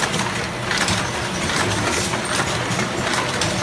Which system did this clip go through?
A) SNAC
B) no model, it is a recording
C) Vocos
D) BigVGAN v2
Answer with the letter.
B